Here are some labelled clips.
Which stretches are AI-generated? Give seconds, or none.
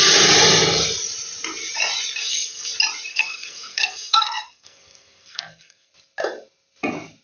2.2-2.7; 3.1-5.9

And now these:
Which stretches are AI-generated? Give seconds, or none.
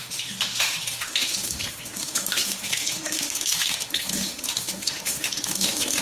0.0-6.0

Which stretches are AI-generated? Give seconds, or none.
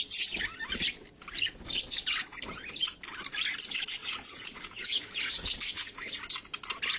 4.0-5.5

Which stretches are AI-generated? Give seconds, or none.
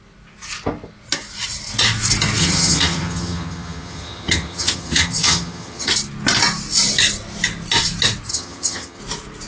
2.4-5.9; 8.3-9.0